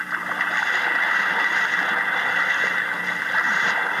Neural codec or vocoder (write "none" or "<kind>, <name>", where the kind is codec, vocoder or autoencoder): none